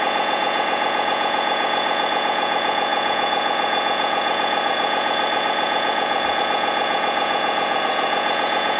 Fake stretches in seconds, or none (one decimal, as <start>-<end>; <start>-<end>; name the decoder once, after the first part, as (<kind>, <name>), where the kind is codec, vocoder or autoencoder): 0.0-8.8 (vocoder, Vocos)